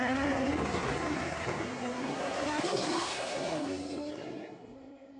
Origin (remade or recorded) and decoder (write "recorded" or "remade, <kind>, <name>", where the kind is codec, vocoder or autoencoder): remade, codec, SNAC